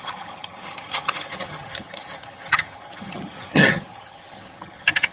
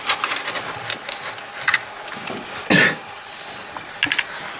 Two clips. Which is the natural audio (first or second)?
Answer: second